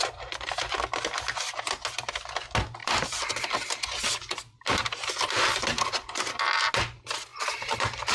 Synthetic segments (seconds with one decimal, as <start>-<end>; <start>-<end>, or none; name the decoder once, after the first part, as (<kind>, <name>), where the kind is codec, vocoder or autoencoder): 2.8-5.1 (vocoder, BigVGAN v2); 7.3-8.1